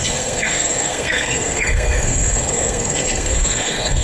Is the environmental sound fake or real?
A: fake